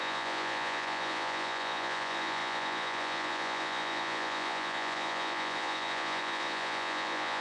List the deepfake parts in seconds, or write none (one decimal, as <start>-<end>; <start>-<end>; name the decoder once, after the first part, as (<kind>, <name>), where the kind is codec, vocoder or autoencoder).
0.0-7.4 (vocoder, Vocos)